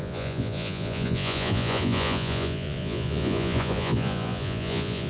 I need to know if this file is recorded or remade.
remade